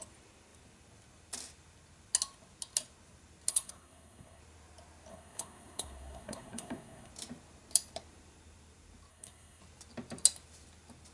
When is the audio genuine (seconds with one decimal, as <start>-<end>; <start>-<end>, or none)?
0.0-3.5; 4.4-5.1; 7.1-9.1; 9.6-11.1